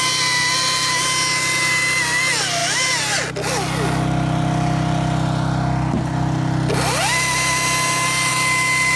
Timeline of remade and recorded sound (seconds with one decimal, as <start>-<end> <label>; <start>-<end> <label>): 0.0-9.0 recorded